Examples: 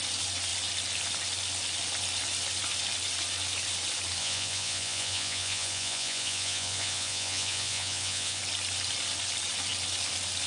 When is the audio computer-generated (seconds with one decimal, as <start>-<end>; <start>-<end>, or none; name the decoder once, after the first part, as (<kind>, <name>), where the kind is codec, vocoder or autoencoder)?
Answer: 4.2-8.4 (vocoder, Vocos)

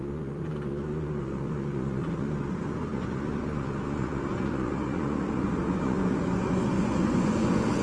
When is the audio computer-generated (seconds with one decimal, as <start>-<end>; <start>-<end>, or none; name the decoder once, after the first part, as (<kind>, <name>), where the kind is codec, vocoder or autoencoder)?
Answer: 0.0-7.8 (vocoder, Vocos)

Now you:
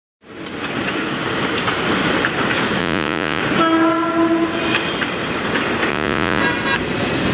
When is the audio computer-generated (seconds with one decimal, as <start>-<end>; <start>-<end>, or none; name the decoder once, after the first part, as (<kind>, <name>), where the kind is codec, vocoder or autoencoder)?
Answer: 2.8-3.4 (vocoder, Vocos); 5.9-6.4

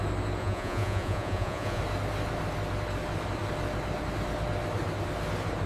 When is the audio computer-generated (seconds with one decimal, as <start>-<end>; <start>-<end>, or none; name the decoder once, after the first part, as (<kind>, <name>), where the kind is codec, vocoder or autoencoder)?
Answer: 0.4-1.8 (vocoder, Vocos)

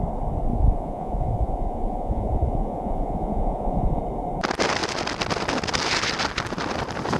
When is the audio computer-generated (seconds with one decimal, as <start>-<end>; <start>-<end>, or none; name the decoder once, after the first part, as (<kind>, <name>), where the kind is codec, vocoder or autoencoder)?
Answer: 0.5-4.0 (vocoder, Vocos)

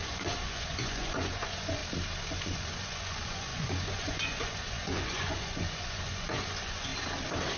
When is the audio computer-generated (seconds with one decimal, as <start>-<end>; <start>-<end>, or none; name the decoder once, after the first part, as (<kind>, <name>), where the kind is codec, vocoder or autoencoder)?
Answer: 0.0-1.8 (vocoder, Vocos); 2.3-6.9